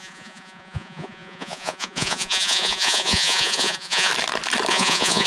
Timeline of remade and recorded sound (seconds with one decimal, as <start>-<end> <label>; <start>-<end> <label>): 0.0-4.1 remade; 4.1-4.7 recorded; 4.7-5.3 remade